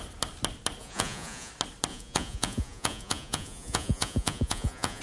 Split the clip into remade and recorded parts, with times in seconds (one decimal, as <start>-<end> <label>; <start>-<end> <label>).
0.0-0.8 recorded; 0.8-1.5 remade; 1.5-1.9 recorded; 1.9-5.0 remade

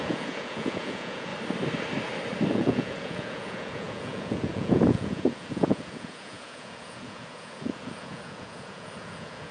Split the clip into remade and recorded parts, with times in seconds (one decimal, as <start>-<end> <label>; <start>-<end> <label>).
0.0-1.3 remade; 1.3-2.5 recorded; 2.5-9.5 remade

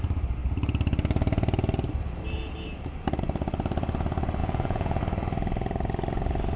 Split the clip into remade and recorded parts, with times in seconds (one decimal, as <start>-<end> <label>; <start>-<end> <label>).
0.0-4.4 recorded; 4.4-5.0 remade; 5.0-6.6 recorded